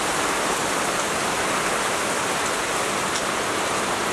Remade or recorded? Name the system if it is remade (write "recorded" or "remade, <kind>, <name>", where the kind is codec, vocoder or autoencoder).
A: recorded